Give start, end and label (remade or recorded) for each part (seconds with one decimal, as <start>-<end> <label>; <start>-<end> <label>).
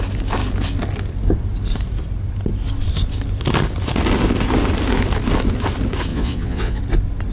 0.0-6.1 recorded; 6.1-6.8 remade; 6.8-7.3 recorded